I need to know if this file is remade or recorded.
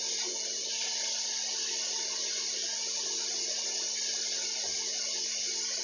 recorded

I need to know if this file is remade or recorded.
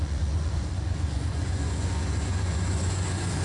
remade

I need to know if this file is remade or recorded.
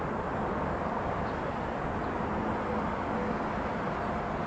recorded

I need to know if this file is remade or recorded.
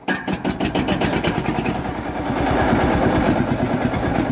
recorded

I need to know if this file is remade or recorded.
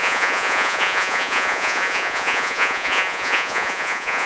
remade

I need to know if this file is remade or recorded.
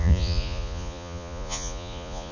remade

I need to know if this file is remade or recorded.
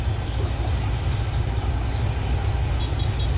recorded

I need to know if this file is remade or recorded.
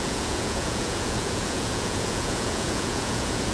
remade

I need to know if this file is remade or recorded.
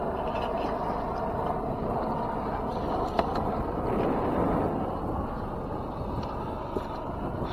recorded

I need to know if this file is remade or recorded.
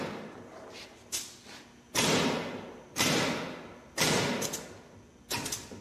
recorded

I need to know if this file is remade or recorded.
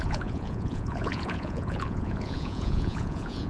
remade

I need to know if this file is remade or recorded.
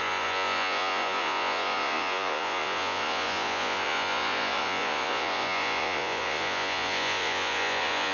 remade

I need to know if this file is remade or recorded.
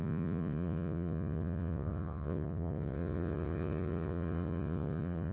remade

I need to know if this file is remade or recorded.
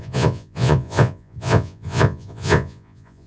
remade